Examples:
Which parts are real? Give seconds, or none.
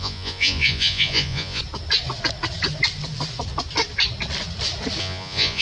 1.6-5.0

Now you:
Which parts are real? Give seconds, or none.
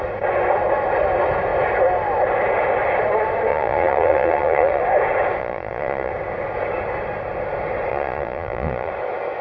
0.0-3.5; 4.8-5.4; 6.1-7.9; 8.9-9.4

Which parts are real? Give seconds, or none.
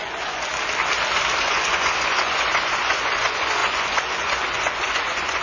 0.5-1.4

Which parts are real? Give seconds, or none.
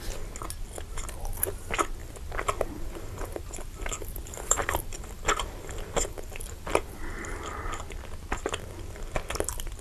0.0-2.0; 7.0-9.8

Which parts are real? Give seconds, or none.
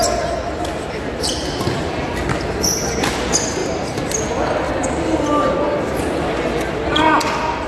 0.0-7.7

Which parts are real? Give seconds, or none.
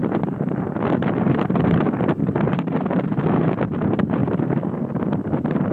4.2-5.3